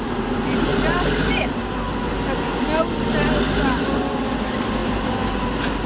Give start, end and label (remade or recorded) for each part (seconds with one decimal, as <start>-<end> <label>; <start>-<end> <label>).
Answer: 0.0-5.9 recorded